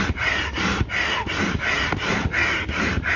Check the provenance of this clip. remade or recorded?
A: recorded